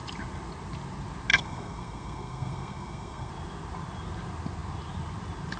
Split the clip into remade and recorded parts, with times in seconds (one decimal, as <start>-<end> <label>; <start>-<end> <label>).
0.0-1.3 recorded; 1.3-3.3 remade; 3.3-5.6 recorded